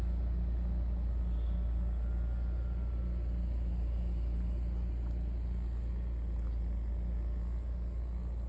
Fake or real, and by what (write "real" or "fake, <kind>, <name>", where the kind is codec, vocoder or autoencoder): real